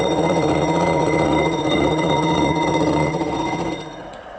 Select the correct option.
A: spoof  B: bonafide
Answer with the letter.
A